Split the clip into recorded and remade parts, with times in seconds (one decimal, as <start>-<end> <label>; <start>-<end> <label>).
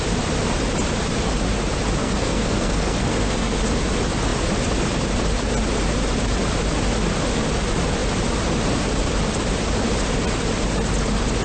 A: 0.0-2.0 recorded; 2.0-3.6 remade; 3.6-11.4 recorded